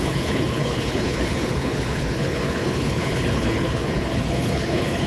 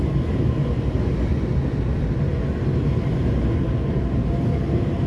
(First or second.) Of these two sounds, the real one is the second